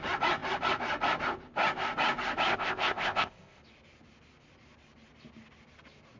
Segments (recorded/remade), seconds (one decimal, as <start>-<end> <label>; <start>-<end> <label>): 0.0-2.5 recorded; 2.5-3.6 remade; 3.6-6.2 recorded